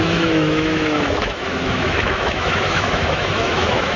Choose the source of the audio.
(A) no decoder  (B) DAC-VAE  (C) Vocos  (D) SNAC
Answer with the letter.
B